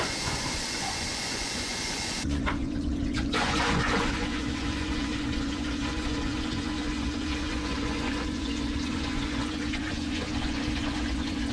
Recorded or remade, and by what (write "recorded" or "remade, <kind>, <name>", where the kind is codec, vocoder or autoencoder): remade, vocoder, Vocos